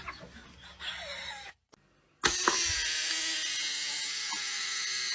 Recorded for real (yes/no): yes